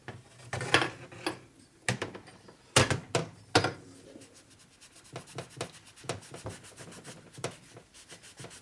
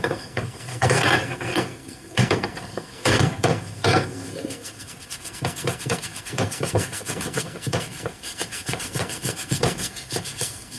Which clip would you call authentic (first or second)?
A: first